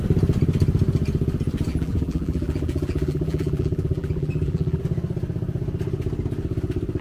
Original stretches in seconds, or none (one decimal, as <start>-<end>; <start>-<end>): 0.0-1.7; 4.8-7.0